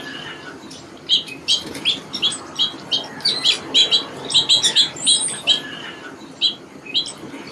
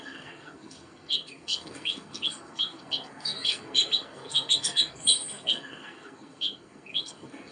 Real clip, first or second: first